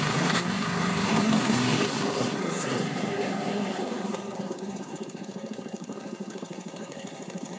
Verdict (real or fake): fake